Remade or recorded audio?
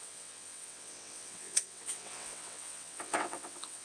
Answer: remade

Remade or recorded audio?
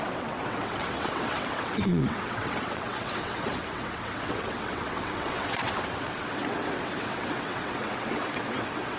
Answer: remade